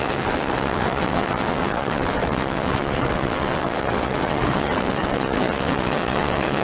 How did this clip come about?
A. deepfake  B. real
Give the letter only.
A